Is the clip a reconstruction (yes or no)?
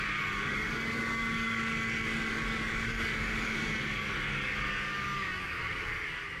yes